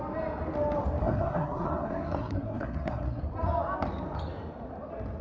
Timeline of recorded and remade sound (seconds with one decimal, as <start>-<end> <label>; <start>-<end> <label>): 0.0-1.0 recorded; 1.0-3.2 remade; 3.2-5.2 recorded